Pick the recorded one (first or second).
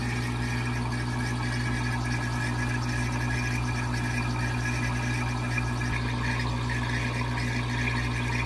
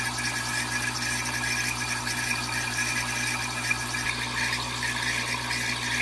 first